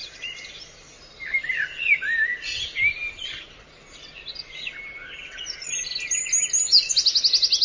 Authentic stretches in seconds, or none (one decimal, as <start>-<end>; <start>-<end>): 0.0-7.6